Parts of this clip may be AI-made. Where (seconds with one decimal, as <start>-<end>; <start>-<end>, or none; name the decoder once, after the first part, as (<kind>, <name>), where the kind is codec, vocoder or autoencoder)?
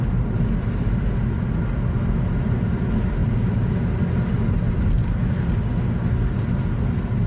none